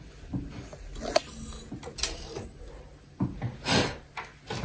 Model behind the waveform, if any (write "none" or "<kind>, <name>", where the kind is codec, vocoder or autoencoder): none